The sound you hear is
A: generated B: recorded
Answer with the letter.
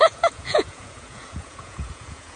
A